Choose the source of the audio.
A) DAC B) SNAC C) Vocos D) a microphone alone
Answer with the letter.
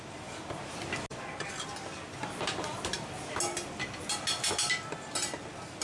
D